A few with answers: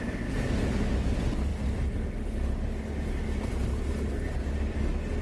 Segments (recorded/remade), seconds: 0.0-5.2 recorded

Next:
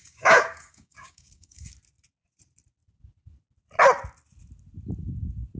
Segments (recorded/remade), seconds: 0.0-1.7 remade; 1.7-5.6 recorded

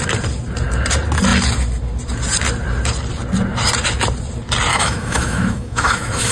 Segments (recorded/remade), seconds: 0.0-4.7 recorded; 4.7-6.3 remade

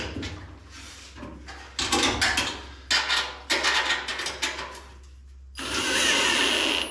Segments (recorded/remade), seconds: 0.0-6.9 recorded